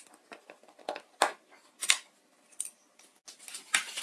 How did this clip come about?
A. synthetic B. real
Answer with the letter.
B